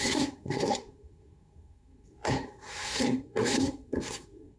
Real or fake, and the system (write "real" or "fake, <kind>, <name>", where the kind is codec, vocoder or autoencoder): fake, codec, SNAC